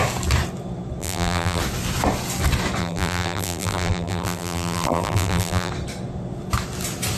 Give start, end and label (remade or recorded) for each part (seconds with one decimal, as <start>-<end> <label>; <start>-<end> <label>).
0.0-1.0 recorded; 1.0-1.6 remade; 1.6-2.8 recorded; 2.8-5.7 remade; 5.7-7.2 recorded